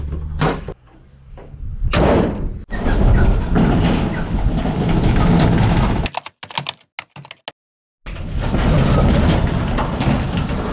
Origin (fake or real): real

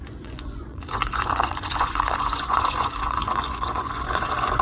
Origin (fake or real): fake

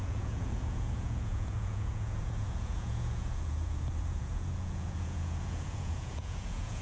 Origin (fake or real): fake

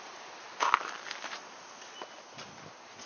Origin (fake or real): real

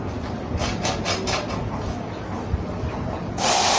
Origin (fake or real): real